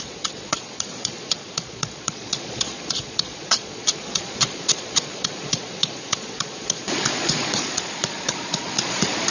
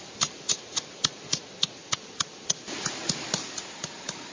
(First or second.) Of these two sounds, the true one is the second